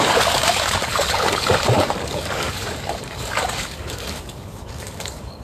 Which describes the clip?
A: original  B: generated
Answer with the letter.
B